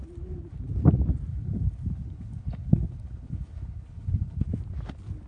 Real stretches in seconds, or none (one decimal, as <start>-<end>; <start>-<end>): 0.0-1.3; 4.5-5.3